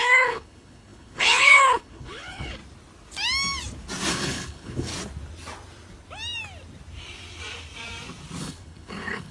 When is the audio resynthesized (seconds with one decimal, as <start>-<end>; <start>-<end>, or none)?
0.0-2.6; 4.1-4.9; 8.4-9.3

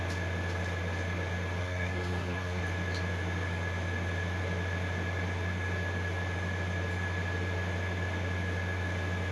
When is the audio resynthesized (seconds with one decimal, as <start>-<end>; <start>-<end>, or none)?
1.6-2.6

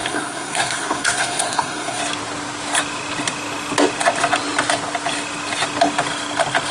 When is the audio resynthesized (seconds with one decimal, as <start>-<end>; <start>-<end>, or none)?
0.0-2.0

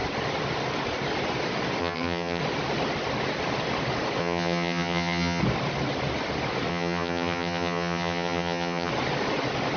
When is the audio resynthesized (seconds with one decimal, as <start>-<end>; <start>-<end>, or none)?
1.8-2.4; 4.2-5.4; 6.7-8.9